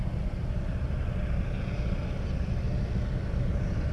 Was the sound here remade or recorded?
recorded